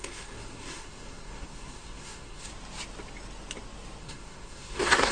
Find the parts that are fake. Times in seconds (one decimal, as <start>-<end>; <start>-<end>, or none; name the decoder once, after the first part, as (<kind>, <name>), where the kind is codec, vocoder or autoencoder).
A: 0.0-2.5 (codec, SNAC); 4.0-5.1